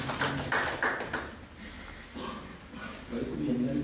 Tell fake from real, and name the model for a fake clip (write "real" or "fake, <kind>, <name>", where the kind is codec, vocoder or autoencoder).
real